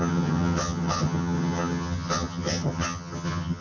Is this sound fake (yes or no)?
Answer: yes